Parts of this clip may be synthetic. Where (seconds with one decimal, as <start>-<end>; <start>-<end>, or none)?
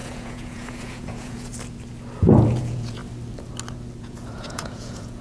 0.0-1.5; 2.2-3.0; 4.0-5.2